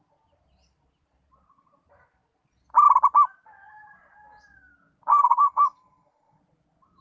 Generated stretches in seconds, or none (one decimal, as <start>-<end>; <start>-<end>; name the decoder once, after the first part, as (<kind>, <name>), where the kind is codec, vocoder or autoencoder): 5.1-6.4 (codec, SNAC)